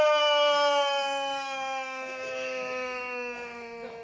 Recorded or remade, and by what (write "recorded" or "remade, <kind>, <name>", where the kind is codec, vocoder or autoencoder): remade, autoencoder, DAC-VAE